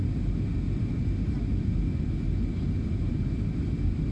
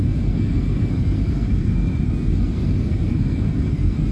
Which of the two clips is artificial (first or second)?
second